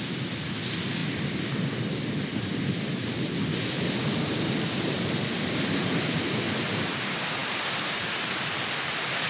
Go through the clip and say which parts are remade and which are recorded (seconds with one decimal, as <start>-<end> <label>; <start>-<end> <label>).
0.0-9.3 recorded